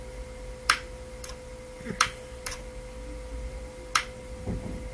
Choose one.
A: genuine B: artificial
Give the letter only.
B